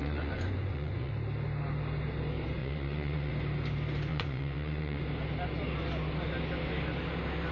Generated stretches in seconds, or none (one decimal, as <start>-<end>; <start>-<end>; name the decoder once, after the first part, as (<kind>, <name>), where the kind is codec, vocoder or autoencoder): 0.0-1.1 (vocoder, Vocos); 2.6-3.3; 4.1-5.0